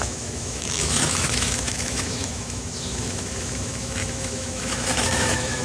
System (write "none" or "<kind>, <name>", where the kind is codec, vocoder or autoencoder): autoencoder, DAC-VAE